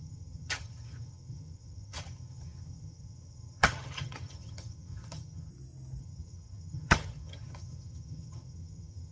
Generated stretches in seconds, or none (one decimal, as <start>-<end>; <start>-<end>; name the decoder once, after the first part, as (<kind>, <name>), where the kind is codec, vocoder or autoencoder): 0.0-5.5 (vocoder, HiFi-GAN); 6.0-9.1